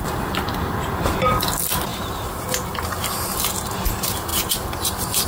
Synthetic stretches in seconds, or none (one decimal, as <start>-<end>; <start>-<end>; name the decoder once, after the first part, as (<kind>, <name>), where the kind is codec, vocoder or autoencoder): none